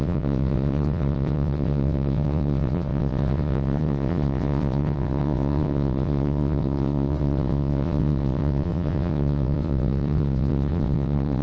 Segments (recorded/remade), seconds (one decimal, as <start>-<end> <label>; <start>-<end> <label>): 0.0-11.4 remade